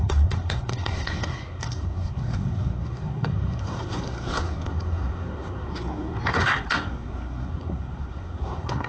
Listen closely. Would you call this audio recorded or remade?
remade